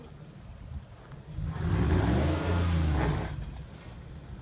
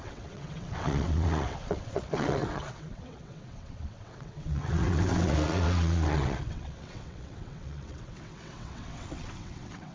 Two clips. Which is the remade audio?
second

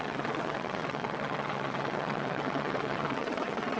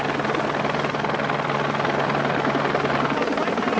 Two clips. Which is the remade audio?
first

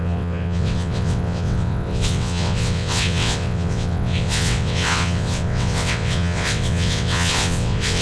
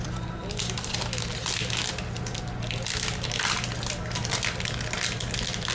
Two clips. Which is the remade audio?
first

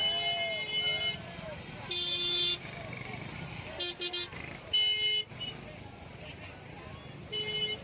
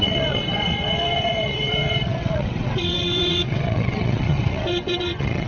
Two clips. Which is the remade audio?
second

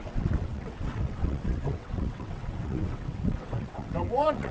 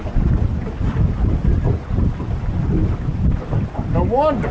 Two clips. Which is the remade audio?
first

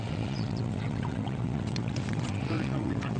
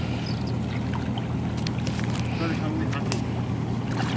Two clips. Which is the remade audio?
first